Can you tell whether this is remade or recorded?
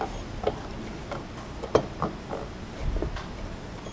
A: recorded